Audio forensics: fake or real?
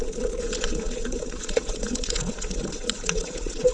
fake